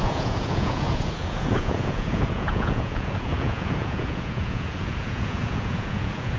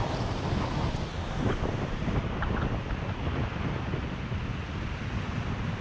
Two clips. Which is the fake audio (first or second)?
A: first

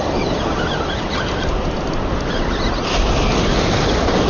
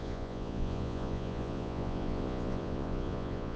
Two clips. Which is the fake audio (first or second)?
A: second